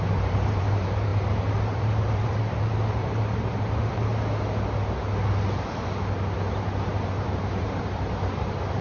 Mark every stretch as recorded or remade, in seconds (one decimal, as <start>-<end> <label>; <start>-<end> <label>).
0.0-1.1 remade; 1.1-1.6 recorded; 1.6-4.1 remade; 4.1-6.9 recorded; 6.9-8.8 remade

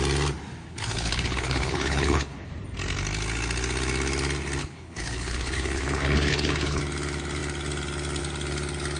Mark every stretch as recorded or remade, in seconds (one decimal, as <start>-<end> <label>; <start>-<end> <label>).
0.0-0.6 recorded; 0.6-2.5 remade; 2.5-4.6 recorded; 4.6-6.8 remade; 6.8-9.0 recorded

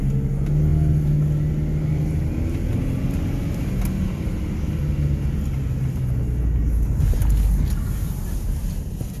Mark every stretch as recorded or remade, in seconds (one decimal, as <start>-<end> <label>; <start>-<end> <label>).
0.0-9.2 recorded

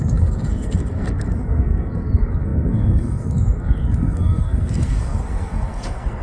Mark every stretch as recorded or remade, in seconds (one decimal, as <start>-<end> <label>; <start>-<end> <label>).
0.0-6.2 remade

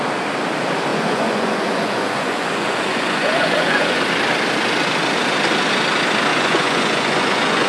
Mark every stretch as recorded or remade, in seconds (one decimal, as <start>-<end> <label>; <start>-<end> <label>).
0.0-0.9 recorded; 0.9-4.0 remade; 4.0-6.3 recorded; 6.3-7.7 remade

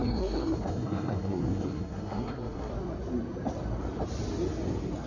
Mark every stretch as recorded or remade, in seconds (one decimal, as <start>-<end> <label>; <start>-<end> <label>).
0.0-2.7 remade; 2.7-5.1 recorded